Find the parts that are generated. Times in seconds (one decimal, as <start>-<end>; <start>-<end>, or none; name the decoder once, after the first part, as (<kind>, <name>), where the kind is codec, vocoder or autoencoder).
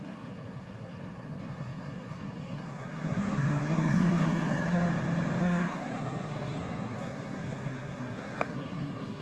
0.0-4.9 (codec, SNAC); 5.4-9.2